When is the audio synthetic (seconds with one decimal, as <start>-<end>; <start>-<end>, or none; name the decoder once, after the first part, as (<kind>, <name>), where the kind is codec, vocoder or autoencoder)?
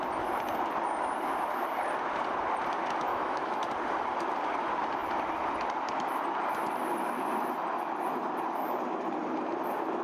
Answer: 3.1-3.7 (autoencoder, DAC-VAE)